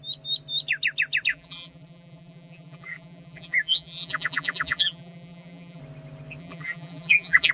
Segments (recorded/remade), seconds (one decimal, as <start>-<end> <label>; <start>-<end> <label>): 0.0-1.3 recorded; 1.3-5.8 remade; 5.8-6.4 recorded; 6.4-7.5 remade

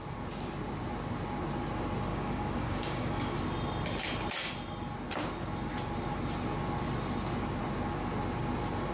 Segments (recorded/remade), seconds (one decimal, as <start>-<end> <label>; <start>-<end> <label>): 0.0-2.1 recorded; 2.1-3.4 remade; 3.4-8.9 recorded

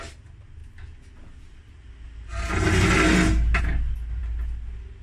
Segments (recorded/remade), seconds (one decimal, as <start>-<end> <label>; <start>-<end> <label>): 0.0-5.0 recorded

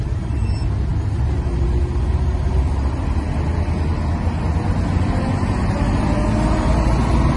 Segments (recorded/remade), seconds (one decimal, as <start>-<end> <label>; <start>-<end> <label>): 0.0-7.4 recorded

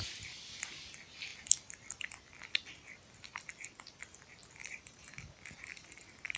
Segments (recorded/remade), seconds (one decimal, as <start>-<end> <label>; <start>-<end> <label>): 0.0-4.6 recorded; 4.6-5.3 remade; 5.3-6.4 recorded